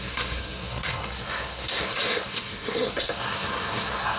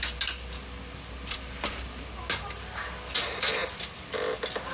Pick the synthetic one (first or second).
first